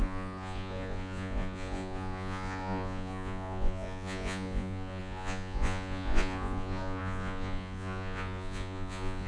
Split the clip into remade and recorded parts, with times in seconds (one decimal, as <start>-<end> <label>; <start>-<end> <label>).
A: 0.0-9.3 remade